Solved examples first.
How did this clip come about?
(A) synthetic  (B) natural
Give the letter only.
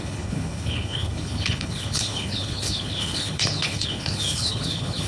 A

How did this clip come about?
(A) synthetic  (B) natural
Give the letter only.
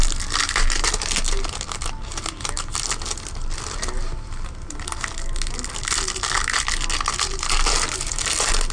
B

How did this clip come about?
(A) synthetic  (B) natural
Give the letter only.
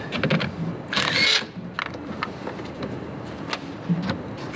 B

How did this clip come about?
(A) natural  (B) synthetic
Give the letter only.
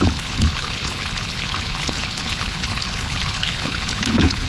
B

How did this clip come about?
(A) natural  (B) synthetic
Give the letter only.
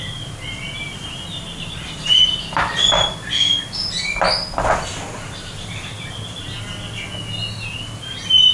A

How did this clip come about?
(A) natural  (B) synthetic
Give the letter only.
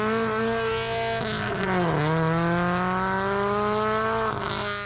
A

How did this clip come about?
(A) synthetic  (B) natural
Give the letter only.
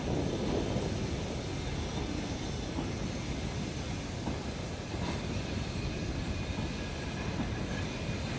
B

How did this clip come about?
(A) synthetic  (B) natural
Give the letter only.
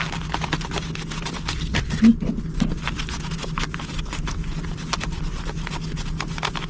B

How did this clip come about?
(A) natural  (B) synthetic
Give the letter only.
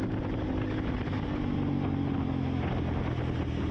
A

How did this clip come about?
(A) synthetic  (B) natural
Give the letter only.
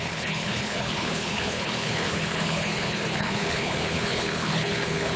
A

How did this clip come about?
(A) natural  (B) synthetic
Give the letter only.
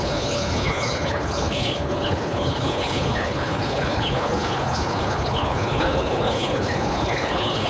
B